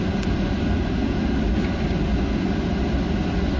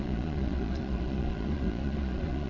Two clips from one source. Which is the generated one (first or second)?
second